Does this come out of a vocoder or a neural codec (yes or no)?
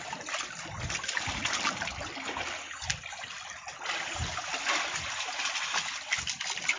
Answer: no